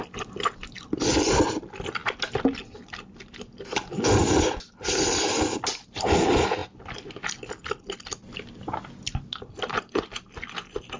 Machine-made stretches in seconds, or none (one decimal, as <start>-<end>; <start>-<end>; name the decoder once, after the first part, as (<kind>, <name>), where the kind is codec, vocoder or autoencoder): none